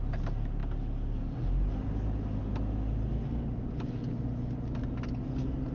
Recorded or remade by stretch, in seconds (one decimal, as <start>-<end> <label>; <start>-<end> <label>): 0.0-5.7 recorded